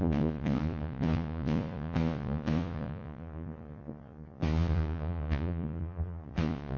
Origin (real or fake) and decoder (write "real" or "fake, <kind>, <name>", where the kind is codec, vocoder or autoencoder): fake, vocoder, Vocos